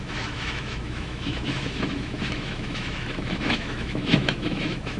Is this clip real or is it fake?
fake